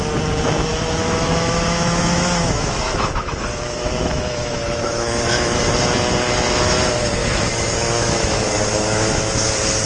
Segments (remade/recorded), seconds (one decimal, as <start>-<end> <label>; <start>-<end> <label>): 0.0-0.7 recorded; 0.7-5.6 remade; 5.6-7.2 recorded; 7.2-9.3 remade; 9.3-9.9 recorded